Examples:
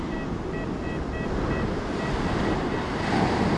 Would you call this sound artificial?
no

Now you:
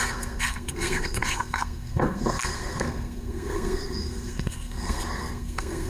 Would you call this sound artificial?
yes